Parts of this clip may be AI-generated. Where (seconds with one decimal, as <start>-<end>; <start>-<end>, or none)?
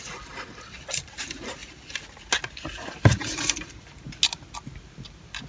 none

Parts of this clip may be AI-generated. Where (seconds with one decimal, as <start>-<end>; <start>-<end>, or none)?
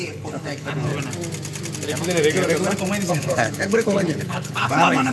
0.0-0.9; 3.1-5.1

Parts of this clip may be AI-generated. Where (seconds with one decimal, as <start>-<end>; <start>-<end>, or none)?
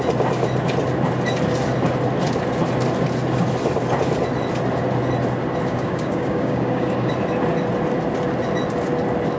5.7-7.1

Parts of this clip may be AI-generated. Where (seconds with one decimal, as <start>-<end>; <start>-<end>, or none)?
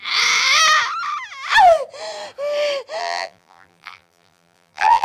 3.0-5.0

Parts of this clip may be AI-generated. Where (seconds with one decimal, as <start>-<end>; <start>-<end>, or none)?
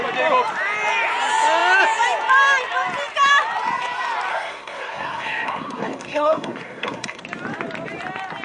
4.3-7.2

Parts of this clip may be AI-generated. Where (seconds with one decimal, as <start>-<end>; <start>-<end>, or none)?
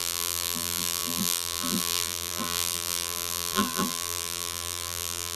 0.0-5.4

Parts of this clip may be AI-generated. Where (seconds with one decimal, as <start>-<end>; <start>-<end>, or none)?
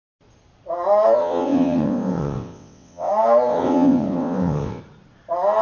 1.2-3.1; 3.5-4.8